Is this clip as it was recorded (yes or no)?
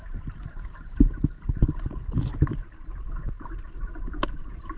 yes